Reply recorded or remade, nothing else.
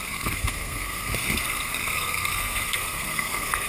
remade